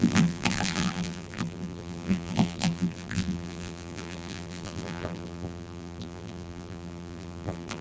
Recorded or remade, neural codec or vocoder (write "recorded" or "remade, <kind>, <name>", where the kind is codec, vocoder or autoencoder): remade, vocoder, BigVGAN v2